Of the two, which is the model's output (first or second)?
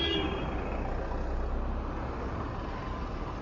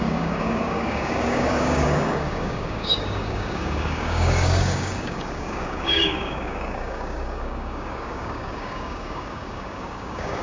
second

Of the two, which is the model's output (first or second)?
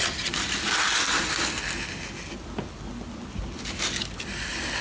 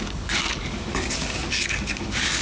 second